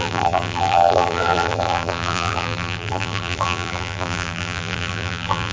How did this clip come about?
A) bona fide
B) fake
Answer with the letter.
B